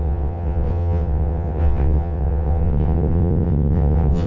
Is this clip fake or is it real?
fake